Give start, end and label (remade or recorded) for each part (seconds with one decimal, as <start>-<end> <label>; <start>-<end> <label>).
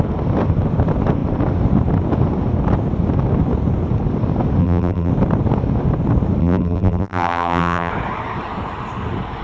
0.0-4.6 recorded; 4.6-5.1 remade; 5.1-6.4 recorded; 6.4-7.9 remade; 7.9-9.4 recorded